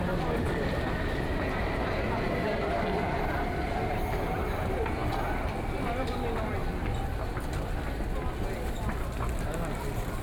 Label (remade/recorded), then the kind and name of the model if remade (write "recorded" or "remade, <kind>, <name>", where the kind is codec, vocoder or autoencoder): recorded